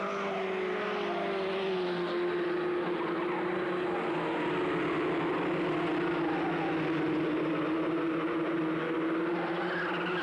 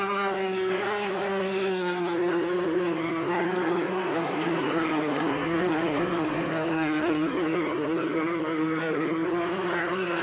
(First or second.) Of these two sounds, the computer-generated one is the second